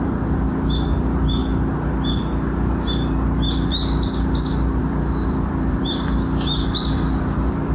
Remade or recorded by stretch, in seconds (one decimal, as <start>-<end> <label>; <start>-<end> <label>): 0.0-1.4 remade; 1.4-4.8 recorded; 4.8-7.7 remade